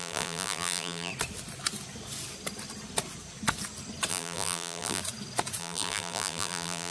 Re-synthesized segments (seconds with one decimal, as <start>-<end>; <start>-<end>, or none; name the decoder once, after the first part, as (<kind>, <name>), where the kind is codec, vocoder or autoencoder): 0.0-1.1 (vocoder, BigVGAN v2); 4.1-5.0; 5.6-6.9